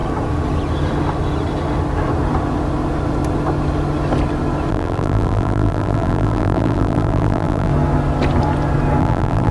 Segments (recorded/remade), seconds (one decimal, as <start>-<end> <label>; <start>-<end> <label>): 0.0-4.7 recorded; 4.7-7.7 remade; 7.7-9.0 recorded; 9.0-9.5 remade